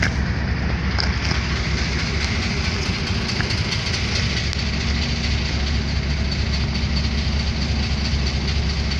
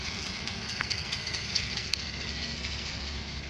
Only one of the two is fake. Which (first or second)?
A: second